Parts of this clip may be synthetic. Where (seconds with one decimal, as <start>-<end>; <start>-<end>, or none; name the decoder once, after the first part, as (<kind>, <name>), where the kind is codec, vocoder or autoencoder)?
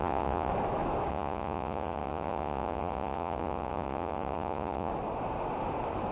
0.0-0.5 (vocoder, Vocos); 1.1-4.9